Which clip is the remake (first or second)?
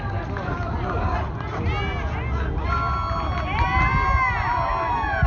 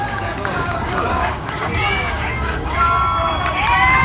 second